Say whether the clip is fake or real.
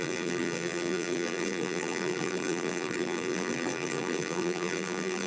fake